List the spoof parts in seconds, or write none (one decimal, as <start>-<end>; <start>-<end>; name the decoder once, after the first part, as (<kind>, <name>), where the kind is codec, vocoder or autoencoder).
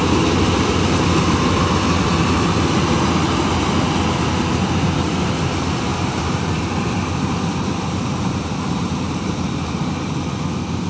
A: 5.9-9.9 (vocoder, BigVGAN v2)